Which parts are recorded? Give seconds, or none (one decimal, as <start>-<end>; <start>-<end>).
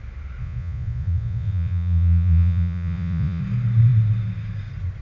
0.0-0.4; 3.4-5.0